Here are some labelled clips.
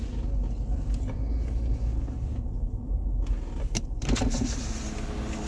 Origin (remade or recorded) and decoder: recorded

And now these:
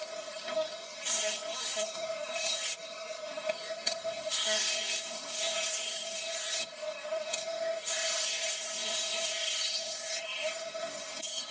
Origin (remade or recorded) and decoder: remade, codec, SNAC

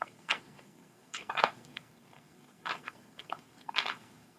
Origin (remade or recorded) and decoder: remade, codec, SNAC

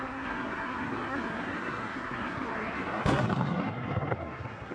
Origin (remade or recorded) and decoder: remade, codec, SNAC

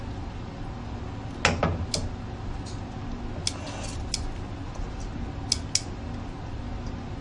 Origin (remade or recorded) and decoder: recorded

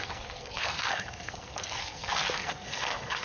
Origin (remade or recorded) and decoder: remade, codec, SNAC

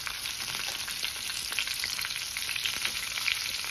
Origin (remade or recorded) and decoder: recorded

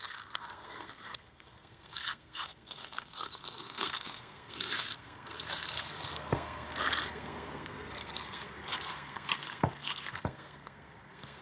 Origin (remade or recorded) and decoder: remade, codec, SNAC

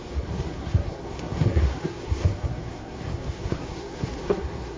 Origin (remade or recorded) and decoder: remade, codec, SNAC